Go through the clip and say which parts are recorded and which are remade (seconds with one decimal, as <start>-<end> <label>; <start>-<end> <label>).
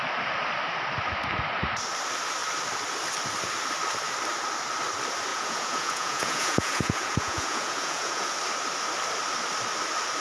0.0-5.3 recorded; 5.3-8.3 remade; 8.3-10.2 recorded